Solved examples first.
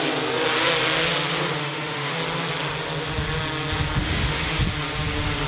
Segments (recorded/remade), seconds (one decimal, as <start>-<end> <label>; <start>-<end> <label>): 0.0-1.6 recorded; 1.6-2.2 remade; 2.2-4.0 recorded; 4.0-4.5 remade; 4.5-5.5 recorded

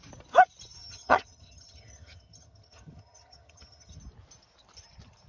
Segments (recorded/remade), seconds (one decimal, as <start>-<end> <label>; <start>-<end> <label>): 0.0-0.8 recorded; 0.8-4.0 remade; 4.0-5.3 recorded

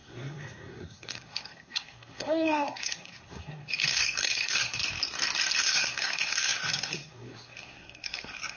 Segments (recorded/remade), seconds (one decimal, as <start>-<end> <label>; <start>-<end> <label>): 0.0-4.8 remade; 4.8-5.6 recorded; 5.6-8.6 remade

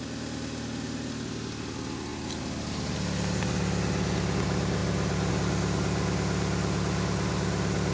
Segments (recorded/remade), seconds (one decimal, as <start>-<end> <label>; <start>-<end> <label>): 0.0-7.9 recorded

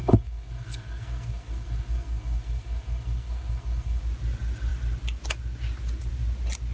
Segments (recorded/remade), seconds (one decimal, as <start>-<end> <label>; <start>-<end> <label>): 0.0-4.0 remade; 4.0-6.7 recorded

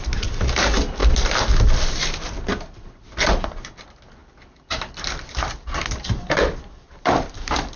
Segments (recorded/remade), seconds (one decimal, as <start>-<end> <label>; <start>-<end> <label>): 0.0-4.2 recorded; 4.2-6.4 remade; 6.4-7.8 recorded